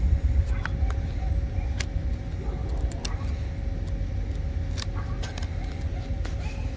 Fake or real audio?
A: real